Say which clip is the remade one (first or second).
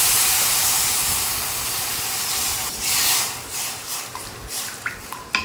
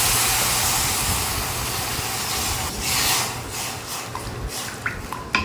first